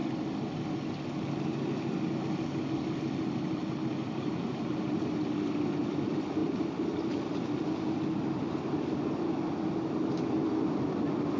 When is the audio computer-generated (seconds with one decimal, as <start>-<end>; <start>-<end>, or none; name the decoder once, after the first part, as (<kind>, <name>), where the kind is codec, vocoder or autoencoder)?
none